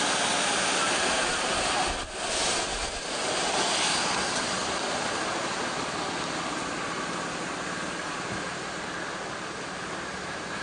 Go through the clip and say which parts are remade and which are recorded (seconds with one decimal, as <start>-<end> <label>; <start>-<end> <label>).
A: 0.0-10.6 recorded